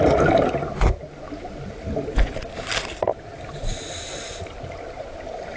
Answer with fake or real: real